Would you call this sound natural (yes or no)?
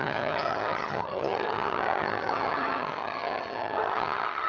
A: no